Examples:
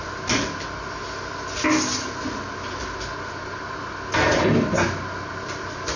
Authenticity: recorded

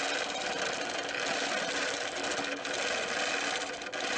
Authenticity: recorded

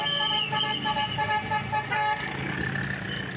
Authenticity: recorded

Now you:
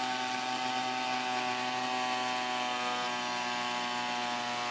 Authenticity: recorded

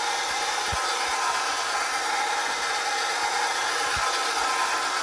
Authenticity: recorded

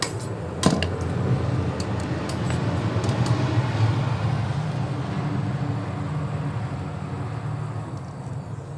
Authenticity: recorded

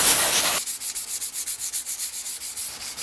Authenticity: recorded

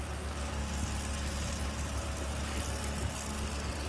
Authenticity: recorded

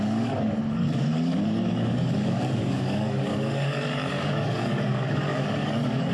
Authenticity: remade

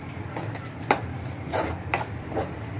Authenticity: remade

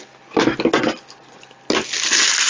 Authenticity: recorded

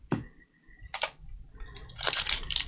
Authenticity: remade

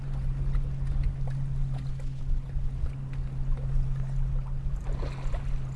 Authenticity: recorded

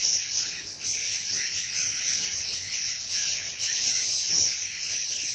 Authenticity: remade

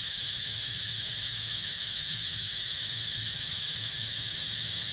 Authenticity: remade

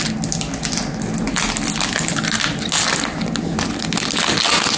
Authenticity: recorded